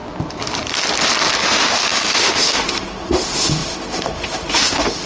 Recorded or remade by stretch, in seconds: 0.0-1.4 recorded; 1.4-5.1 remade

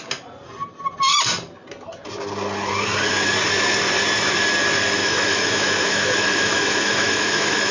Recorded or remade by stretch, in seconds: 0.0-5.0 recorded; 5.0-7.7 remade

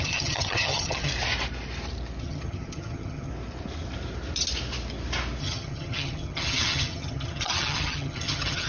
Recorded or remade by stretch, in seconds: 0.0-1.1 remade; 1.1-2.2 recorded; 2.2-3.3 remade; 3.3-5.4 recorded; 5.4-8.7 remade

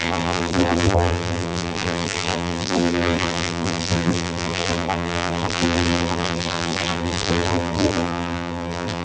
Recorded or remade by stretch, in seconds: 0.0-9.0 remade